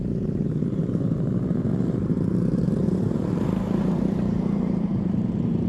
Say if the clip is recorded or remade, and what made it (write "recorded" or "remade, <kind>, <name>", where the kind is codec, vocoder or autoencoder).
remade, vocoder, BigVGAN v2